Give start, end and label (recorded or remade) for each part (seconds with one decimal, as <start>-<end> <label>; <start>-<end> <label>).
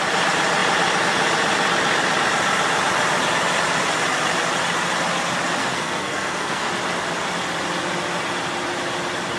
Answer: 0.0-5.6 recorded; 5.6-6.7 remade; 6.7-9.4 recorded